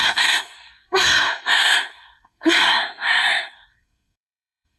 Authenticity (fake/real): fake